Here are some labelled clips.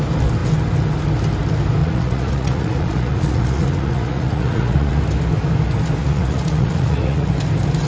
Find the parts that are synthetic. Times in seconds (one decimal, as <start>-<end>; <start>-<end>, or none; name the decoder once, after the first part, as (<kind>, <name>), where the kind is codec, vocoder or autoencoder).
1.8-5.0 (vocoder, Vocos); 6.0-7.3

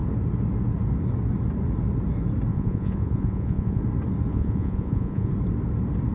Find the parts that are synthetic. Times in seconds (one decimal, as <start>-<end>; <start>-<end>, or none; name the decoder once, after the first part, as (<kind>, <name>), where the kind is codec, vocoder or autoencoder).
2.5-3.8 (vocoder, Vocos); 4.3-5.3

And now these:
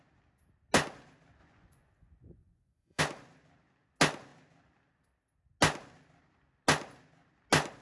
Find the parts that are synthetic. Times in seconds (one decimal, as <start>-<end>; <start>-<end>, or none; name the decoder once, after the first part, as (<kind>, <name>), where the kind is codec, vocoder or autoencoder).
1.4-3.0 (vocoder, Vocos)

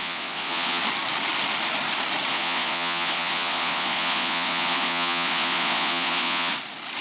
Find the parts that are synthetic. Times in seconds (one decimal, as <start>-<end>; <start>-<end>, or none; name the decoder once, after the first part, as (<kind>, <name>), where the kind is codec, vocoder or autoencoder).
0.0-0.8 (vocoder, Vocos); 2.3-6.5

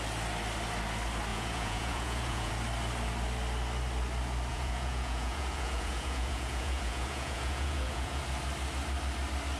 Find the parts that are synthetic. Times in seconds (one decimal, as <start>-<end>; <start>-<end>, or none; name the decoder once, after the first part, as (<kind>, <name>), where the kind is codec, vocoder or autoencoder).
1.3-2.5 (vocoder, Vocos); 4.5-8.2

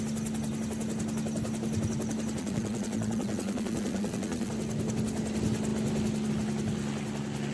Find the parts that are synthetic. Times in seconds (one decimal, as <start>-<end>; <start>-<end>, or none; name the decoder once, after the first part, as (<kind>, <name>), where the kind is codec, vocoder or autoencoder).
2.4-4.5 (vocoder, Vocos)

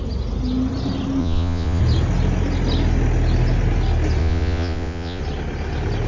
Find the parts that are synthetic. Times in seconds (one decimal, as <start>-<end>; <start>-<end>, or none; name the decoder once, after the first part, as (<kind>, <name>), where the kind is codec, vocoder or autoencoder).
1.2-1.8 (vocoder, Vocos); 4.2-5.2